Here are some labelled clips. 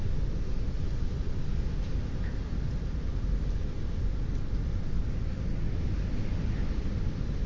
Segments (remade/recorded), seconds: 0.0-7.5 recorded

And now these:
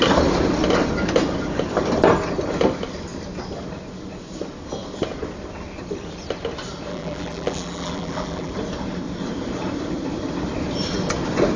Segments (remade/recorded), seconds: 0.0-6.9 recorded; 6.9-8.5 remade; 8.5-11.6 recorded

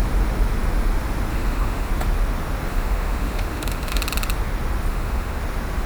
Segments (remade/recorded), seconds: 0.0-1.3 recorded; 1.3-1.9 remade; 1.9-2.7 recorded; 2.7-4.0 remade; 4.0-4.9 recorded; 4.9-5.4 remade; 5.4-5.9 recorded